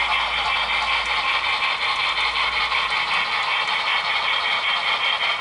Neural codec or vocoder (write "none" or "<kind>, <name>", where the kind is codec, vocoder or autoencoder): none